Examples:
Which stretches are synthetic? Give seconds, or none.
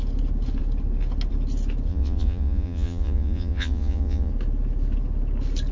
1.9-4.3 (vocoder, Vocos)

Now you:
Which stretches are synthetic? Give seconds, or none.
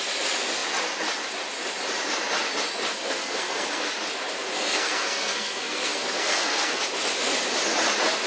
2.9-3.9 (codec, SNAC); 4.5-6.8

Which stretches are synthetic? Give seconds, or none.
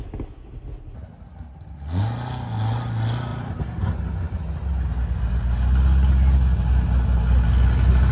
3.3-4.0 (vocoder, BigVGAN v2)